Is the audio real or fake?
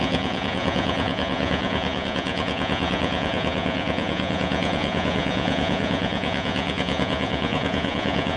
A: fake